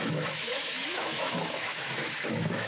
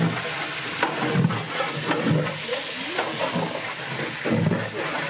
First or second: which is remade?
first